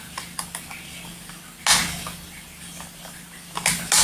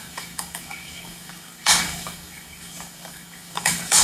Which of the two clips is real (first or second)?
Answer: first